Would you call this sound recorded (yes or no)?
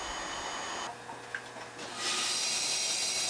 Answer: yes